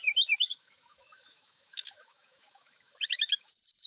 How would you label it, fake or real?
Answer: fake